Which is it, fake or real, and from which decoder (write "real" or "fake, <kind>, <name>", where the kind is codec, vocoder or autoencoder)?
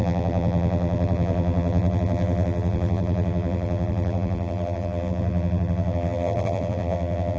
fake, vocoder, BigVGAN v2